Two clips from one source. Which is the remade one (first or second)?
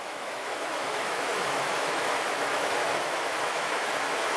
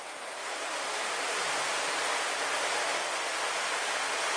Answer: first